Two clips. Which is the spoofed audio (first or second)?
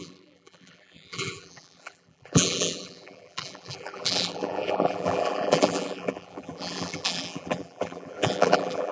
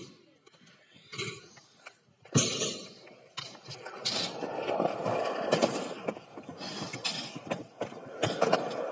first